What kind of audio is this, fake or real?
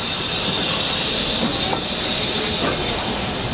real